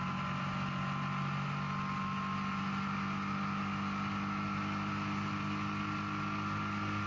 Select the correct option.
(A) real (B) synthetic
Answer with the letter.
A